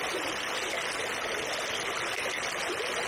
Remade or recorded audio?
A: recorded